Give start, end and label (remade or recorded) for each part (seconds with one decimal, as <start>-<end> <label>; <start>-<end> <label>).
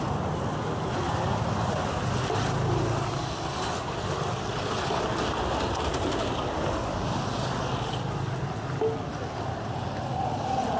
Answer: 0.0-10.8 recorded